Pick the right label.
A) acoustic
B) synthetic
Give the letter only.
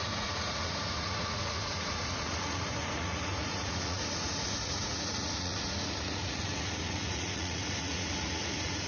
B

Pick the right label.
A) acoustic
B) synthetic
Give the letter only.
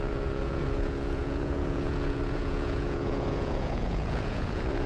B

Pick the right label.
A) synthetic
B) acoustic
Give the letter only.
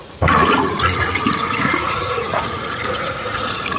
A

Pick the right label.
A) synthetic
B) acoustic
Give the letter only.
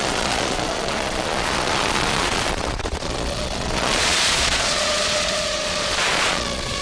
A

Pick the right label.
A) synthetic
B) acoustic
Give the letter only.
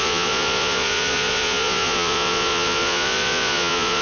A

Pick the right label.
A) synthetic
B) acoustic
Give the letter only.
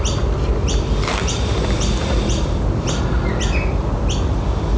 B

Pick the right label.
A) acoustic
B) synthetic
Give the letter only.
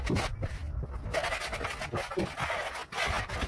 A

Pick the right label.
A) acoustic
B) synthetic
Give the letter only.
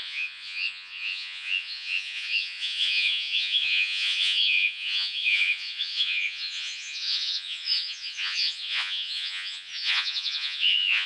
B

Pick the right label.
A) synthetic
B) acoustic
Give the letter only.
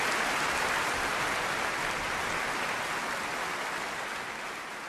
B